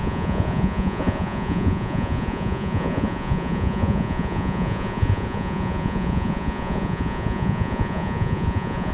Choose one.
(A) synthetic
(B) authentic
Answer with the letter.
A